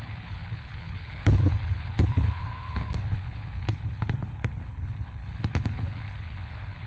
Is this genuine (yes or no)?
no